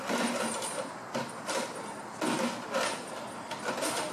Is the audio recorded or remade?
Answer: recorded